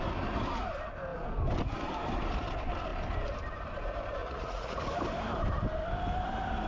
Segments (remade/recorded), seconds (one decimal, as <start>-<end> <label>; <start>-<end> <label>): 0.0-4.2 recorded; 4.2-4.8 remade; 4.8-6.7 recorded